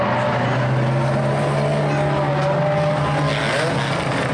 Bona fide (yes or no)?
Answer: yes